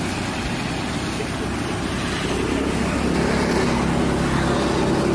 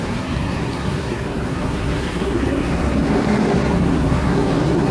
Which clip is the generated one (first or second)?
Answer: second